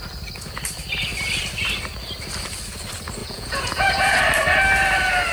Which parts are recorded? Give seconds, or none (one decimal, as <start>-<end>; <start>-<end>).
0.0-3.2; 4.2-5.3